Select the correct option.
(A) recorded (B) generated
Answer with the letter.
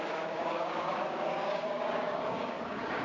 B